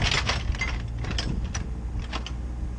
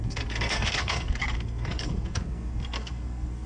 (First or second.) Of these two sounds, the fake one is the second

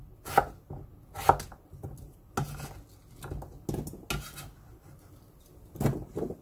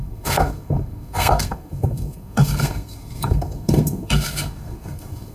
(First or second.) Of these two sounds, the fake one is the second